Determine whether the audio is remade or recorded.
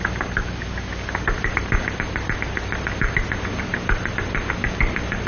recorded